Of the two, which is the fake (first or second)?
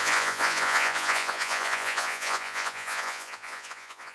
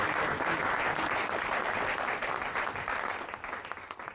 first